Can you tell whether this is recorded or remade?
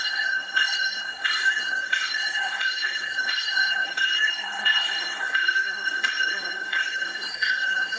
remade